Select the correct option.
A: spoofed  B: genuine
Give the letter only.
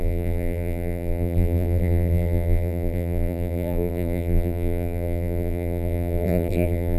A